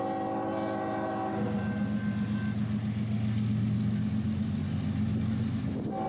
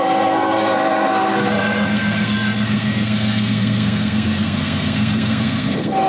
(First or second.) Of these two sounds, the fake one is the second